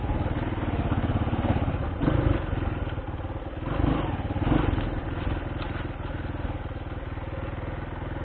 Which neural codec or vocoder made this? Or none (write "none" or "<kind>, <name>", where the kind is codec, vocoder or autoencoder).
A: none